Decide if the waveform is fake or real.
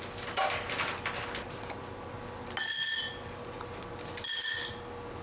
real